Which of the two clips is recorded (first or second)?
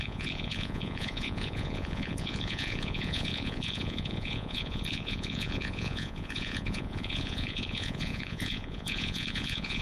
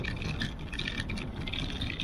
second